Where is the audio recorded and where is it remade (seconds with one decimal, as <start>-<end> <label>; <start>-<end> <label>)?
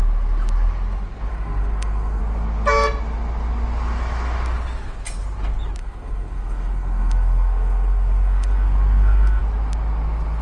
0.0-1.3 recorded; 1.3-2.2 remade; 2.2-5.8 recorded; 5.8-9.4 remade; 9.4-10.4 recorded